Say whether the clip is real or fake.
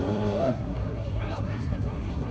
fake